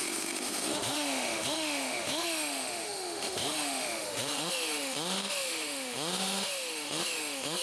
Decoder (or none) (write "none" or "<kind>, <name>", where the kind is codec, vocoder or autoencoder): autoencoder, DAC-VAE